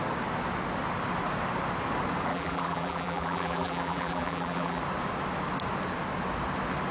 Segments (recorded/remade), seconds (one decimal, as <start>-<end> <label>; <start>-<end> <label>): 0.0-2.3 recorded; 2.3-4.8 remade; 4.8-6.9 recorded